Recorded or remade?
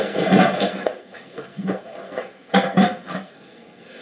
remade